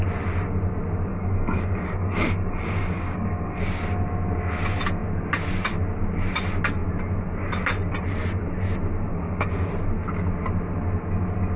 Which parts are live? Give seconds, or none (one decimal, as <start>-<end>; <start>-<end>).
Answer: 0.0-1.1; 3.6-9.1; 9.7-11.6